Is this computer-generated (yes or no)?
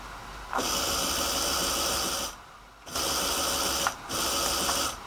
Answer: no